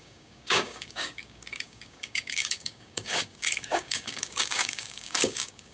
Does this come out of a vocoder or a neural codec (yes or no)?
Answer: yes